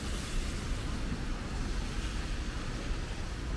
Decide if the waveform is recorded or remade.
recorded